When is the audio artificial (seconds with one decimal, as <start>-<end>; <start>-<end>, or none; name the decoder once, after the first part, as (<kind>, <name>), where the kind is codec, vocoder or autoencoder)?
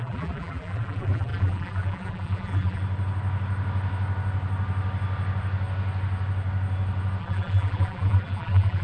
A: 0.0-2.8 (vocoder, BigVGAN v2); 7.2-8.8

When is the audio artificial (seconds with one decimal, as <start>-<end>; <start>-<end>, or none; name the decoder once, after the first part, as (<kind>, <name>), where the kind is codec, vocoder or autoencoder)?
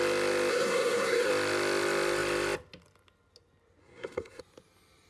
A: 0.5-1.3 (codec, SNAC); 3.8-4.4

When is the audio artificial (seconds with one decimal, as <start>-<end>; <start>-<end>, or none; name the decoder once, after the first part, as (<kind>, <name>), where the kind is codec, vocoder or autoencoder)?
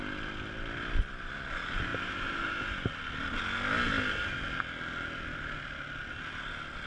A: 1.9-2.5 (vocoder, BigVGAN v2)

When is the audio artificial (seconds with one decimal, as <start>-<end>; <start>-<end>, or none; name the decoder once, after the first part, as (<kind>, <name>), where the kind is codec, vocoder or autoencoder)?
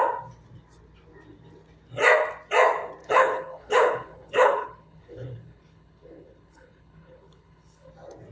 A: 3.0-7.9 (codec, HILCodec)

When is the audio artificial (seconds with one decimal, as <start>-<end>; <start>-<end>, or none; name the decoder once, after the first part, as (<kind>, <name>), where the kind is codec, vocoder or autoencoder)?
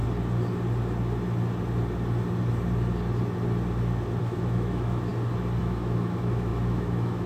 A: 4.2-5.1 (autoencoder, DAC-VAE); 5.6-7.3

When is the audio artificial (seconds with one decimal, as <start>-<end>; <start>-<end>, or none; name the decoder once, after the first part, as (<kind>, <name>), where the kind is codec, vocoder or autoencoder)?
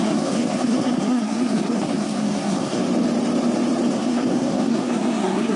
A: 0.0-2.8 (codec, SNAC); 3.9-5.6